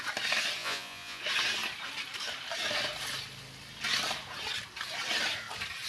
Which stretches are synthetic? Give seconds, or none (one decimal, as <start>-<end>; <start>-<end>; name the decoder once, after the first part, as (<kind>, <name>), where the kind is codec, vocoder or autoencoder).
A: 0.6-1.2 (vocoder, Vocos)